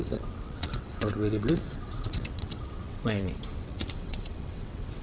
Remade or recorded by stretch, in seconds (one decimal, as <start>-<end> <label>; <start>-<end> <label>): 0.0-5.0 remade